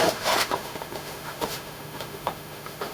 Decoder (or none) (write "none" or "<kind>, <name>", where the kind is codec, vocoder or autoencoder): autoencoder, DAC-VAE